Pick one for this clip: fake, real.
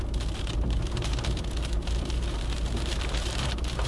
fake